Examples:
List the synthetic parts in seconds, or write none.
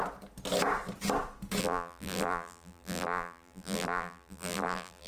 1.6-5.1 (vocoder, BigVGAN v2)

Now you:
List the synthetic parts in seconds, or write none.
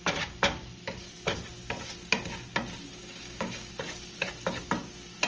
3.0-3.7 (codec, DAC)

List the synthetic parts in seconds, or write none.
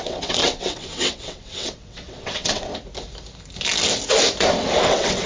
0.0-2.7 (vocoder, WaveNeXt); 4.8-5.3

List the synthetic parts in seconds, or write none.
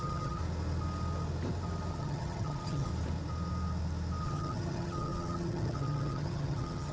0.0-0.4 (vocoder, HiFi-GAN); 1.9-2.9; 4.2-6.9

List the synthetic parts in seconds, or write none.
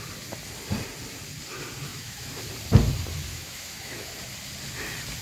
1.9-2.4 (autoencoder, DAC-VAE); 3.3-4.1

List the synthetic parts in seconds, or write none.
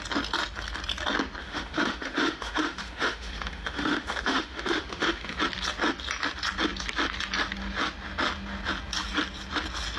1.4-5.4 (autoencoder, DAC-VAE)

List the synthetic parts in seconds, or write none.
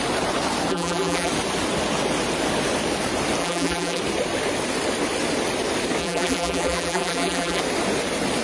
0.7-1.3 (vocoder, BigVGAN v2); 3.4-4.0; 6.0-7.6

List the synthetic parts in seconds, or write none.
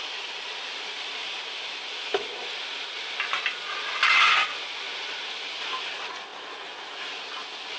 none